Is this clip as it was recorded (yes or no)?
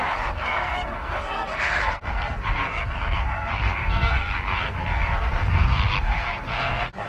no